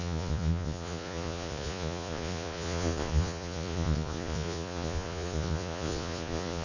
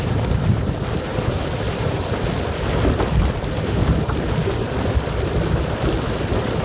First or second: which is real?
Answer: second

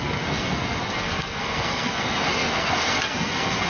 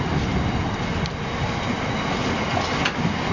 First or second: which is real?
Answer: second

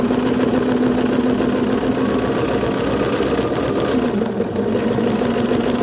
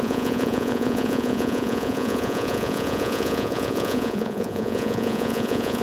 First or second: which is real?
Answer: first